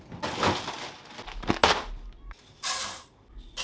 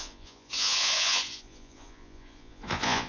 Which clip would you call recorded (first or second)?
first